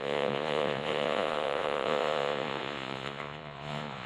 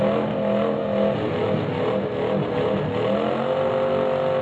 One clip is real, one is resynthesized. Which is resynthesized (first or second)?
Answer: first